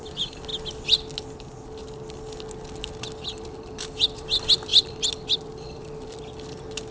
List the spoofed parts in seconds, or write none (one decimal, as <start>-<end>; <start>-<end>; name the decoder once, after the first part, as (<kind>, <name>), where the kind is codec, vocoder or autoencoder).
0.0-0.5 (vocoder, BigVGAN v2); 3.4-6.9